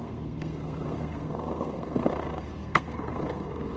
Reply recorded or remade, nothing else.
remade